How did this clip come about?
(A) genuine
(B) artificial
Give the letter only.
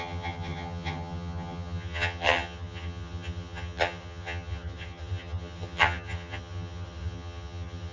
B